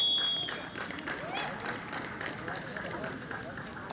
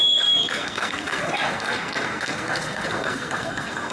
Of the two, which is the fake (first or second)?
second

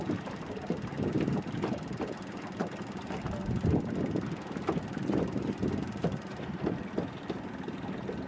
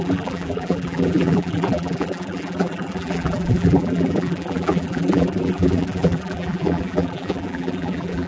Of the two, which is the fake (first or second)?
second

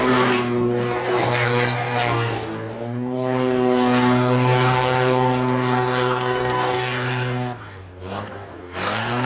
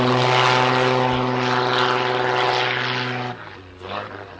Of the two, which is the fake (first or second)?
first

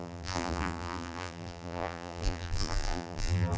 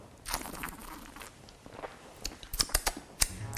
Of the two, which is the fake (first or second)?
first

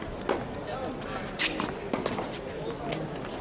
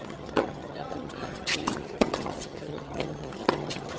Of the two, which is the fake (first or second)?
second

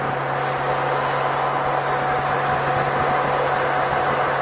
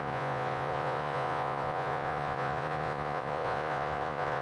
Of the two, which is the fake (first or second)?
second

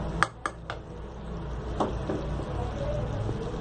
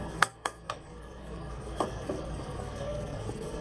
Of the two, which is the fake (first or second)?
second